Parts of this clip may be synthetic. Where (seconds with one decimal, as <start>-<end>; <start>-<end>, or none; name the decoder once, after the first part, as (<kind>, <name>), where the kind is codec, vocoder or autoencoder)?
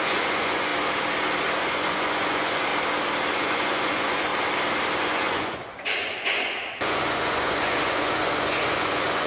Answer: 0.0-0.7 (vocoder, Vocos); 1.6-2.7; 3.3-4.3; 5.0-9.3